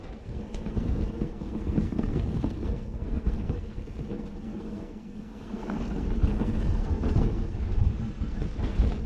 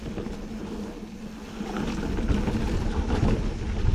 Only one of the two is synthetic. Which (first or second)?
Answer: first